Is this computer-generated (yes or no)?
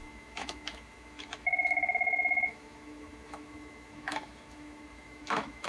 yes